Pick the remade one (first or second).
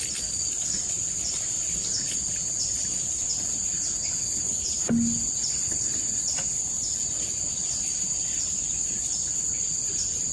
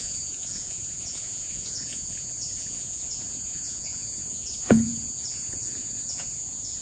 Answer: second